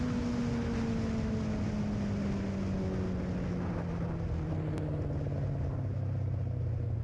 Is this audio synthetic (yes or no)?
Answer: no